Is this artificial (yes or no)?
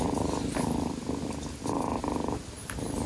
no